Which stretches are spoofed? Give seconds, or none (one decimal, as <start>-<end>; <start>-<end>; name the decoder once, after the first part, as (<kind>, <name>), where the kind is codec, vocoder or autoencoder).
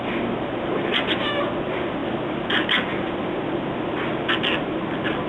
none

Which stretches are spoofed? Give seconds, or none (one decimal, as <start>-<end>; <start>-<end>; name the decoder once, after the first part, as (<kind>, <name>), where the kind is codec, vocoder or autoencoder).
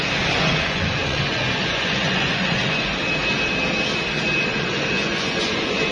0.0-2.9 (vocoder, Vocos); 4.4-5.9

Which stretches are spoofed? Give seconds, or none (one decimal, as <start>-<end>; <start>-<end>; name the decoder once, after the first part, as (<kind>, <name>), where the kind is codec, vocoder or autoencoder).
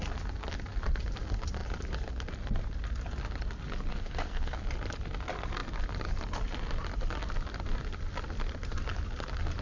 3.9-4.6 (codec, SNAC)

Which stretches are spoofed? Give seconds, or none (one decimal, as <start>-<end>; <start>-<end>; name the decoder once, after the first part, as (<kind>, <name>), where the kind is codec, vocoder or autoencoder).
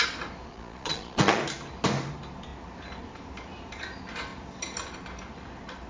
0.5-1.4 (vocoder, Vocos)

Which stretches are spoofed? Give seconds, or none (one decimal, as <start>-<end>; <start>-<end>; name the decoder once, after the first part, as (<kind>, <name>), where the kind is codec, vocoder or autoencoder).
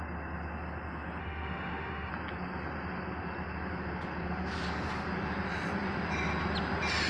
1.2-2.1 (autoencoder, DAC-VAE)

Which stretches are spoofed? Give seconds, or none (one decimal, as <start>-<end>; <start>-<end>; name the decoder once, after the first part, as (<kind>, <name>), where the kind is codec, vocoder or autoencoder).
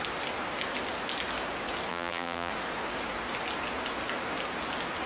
1.9-2.5 (vocoder, BigVGAN v2)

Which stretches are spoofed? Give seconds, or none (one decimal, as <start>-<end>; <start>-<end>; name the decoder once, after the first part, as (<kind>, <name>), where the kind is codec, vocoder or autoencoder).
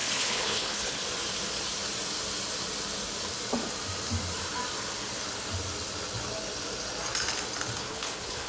0.0-1.0 (codec, HILCodec); 7.8-8.5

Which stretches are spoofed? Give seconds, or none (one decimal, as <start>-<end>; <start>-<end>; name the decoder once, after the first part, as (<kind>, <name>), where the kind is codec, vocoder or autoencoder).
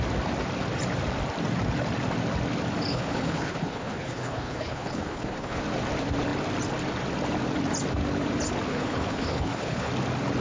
2.9-5.6 (codec, HILCodec); 8.7-9.9